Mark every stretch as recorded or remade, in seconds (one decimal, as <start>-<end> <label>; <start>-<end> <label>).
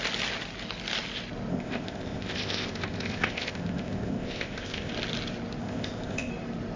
0.0-1.5 recorded; 1.5-4.9 remade; 4.9-5.6 recorded; 5.6-6.3 remade; 6.3-6.8 recorded